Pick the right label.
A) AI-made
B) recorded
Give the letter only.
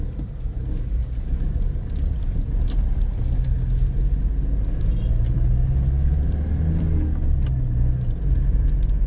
B